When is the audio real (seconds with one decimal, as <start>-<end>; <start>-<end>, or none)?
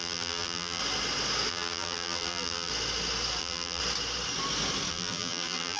0.8-1.5; 2.7-3.4; 3.8-4.9